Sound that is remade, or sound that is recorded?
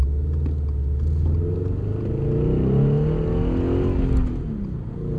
recorded